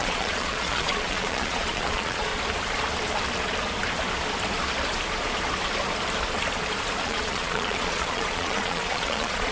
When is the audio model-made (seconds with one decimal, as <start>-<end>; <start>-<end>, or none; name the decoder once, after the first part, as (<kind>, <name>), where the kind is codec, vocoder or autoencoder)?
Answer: 0.0-2.3 (vocoder, Vocos); 7.0-9.5